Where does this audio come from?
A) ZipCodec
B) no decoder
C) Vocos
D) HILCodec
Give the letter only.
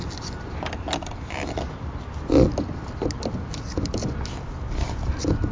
B